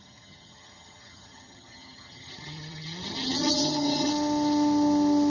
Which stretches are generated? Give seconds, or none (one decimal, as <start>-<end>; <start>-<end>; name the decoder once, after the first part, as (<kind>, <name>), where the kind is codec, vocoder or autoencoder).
0.0-4.1 (vocoder, HiFi-GAN)